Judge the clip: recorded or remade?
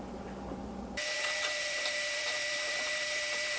remade